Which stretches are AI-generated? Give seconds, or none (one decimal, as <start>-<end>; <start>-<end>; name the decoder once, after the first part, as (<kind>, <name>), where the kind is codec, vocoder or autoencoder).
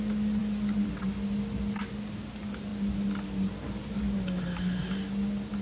none